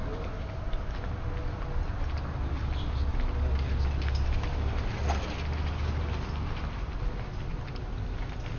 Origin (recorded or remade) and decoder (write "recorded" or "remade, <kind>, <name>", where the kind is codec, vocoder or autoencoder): recorded